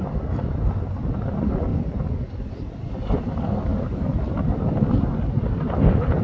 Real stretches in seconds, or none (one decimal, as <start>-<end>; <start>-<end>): 0.0-1.7; 2.9-3.7; 4.8-6.2